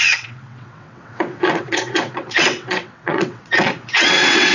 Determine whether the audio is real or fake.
fake